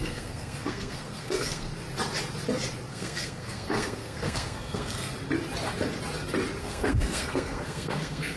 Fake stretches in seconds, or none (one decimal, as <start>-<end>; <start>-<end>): 0.0-1.7; 2.9-5.1; 6.6-8.4